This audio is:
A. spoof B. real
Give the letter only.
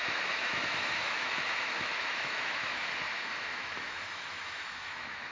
A